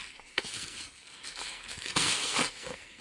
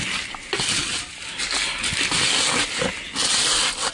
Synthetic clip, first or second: first